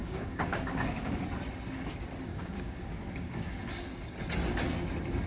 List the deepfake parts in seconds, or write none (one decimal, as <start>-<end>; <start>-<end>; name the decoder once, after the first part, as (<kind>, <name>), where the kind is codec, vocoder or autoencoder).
0.0-1.2 (codec, DAC); 2.3-3.6